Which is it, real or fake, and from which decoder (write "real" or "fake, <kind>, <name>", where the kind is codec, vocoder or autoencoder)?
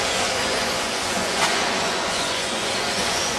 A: fake, vocoder, Vocos